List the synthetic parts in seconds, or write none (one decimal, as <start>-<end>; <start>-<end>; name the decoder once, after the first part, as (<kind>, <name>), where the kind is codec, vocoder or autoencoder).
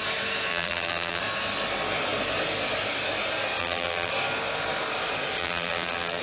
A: 0.5-1.2 (vocoder, BigVGAN v2); 3.6-4.1; 5.4-6.2